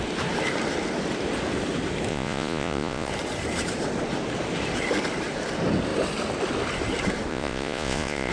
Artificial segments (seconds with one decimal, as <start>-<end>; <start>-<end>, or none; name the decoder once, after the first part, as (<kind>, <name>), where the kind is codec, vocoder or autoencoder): 2.1-3.1 (vocoder, Vocos); 7.3-8.3